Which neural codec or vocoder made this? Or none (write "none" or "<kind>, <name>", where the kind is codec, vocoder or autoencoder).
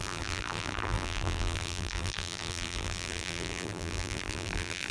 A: vocoder, BigVGAN v2